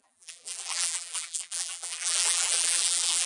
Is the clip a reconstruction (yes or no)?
yes